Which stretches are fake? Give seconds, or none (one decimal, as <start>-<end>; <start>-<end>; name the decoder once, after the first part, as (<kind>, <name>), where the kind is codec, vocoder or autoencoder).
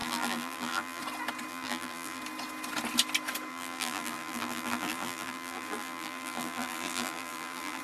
0.0-1.0 (vocoder, BigVGAN v2); 1.5-2.2; 3.5-7.8